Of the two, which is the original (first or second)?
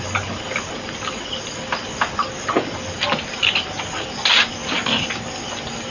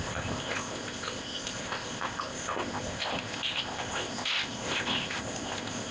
first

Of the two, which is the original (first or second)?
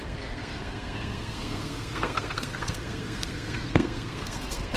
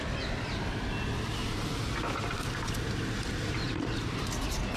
second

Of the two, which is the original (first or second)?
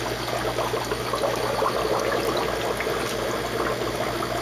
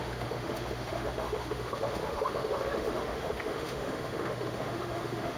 first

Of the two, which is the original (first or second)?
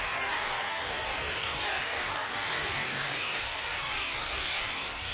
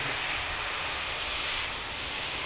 second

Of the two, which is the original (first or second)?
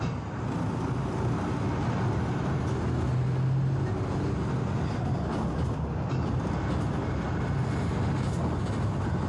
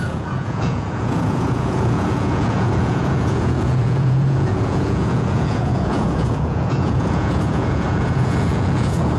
first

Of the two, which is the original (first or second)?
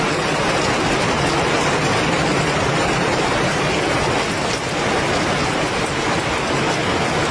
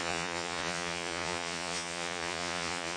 first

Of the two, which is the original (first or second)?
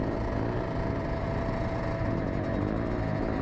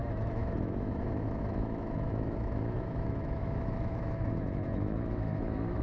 first